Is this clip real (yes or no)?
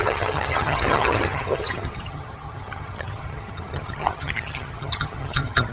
no